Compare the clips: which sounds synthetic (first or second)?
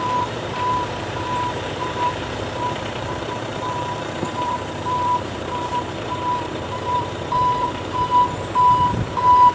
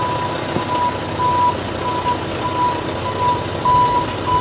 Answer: first